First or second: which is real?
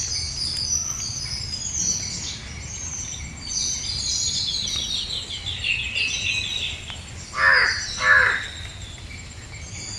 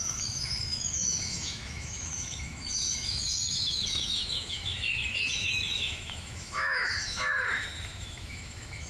first